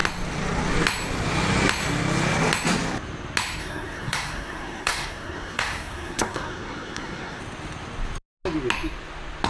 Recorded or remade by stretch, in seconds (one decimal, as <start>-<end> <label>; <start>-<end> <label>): 0.0-3.6 recorded; 3.6-7.4 remade; 7.4-9.5 recorded